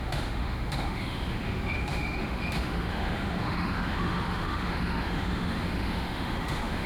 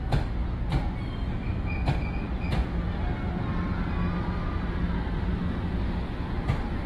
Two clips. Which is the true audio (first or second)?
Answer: second